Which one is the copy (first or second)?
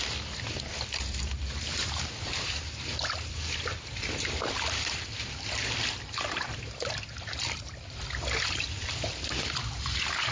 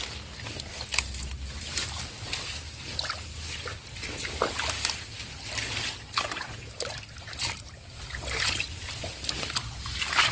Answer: first